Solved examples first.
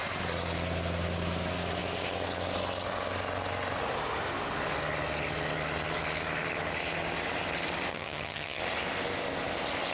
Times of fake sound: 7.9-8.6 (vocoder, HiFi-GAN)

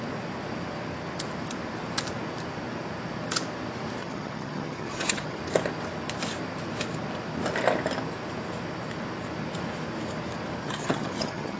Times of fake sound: 4.0-5.4 (vocoder, HiFi-GAN); 10.6-11.6

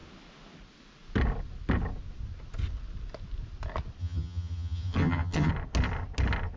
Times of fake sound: 4.0-5.5 (vocoder, HiFi-GAN)

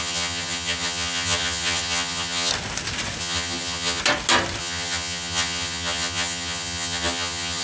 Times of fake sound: 0.0-2.5 (vocoder, HiFi-GAN); 3.2-4.0; 4.6-7.6

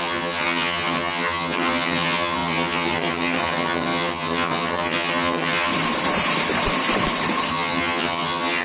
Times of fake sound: 0.0-5.7 (vocoder, HiFi-GAN); 7.5-8.6